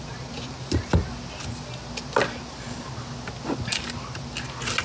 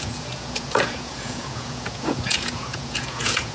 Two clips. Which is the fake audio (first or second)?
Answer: second